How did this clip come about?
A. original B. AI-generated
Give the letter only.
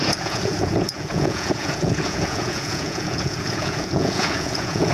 B